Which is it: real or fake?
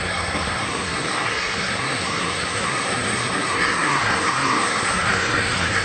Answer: fake